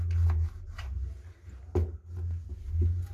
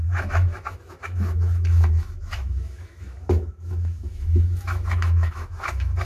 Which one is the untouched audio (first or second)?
first